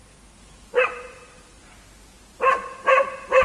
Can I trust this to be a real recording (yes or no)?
yes